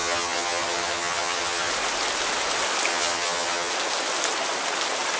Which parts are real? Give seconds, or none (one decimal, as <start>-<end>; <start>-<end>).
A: 1.7-2.9; 3.7-5.2